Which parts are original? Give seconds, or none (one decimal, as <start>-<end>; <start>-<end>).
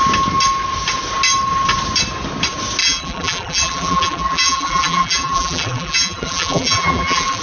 0.0-2.8